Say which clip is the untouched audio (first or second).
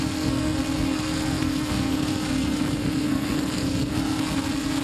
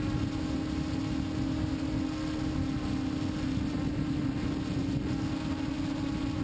second